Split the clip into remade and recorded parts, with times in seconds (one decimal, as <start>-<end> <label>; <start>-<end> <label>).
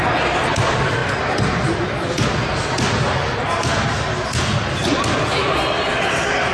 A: 0.0-6.5 recorded